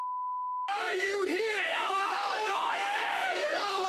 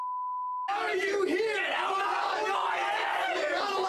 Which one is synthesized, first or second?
first